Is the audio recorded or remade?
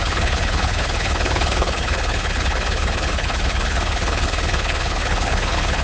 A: remade